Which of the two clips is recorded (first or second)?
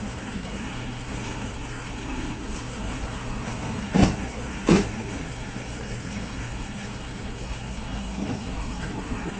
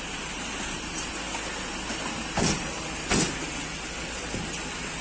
second